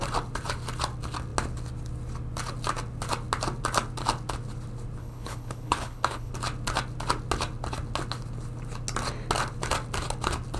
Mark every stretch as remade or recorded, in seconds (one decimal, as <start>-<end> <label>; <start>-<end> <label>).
0.0-5.0 recorded; 5.0-6.3 remade; 6.3-10.6 recorded